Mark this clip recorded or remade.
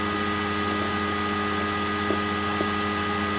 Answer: recorded